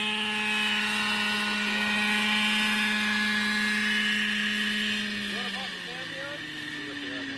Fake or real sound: real